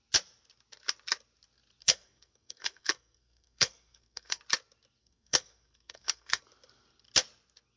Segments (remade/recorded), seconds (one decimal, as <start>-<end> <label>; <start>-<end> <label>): 0.0-1.8 recorded; 1.8-4.4 remade; 4.4-5.0 recorded; 5.0-6.4 remade; 6.4-7.8 recorded